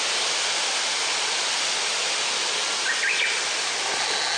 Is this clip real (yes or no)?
yes